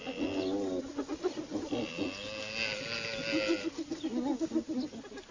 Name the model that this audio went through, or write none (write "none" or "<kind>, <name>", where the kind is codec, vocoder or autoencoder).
none